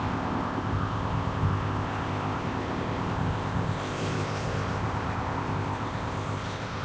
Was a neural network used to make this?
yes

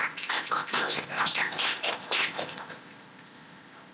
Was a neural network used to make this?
yes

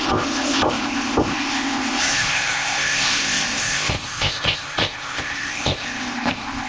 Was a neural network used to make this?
yes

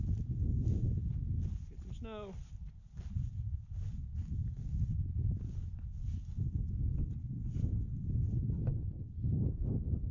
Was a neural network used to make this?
no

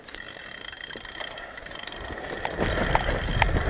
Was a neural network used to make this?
no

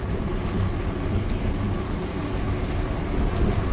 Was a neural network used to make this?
no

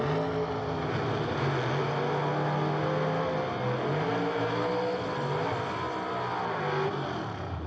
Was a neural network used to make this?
no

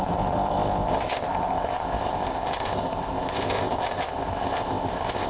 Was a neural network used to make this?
yes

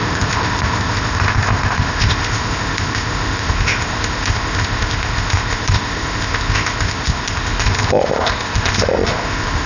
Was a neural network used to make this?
yes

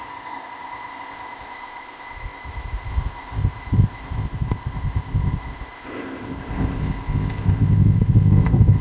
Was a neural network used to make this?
yes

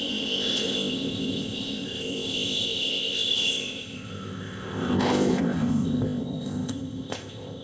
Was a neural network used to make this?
yes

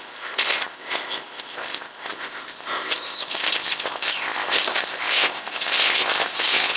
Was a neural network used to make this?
yes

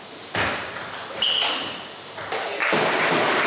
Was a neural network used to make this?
no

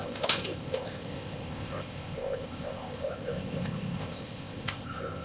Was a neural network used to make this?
yes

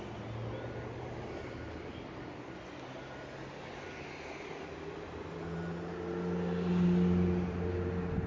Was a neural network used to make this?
no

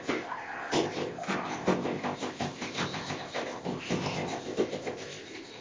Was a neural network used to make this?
yes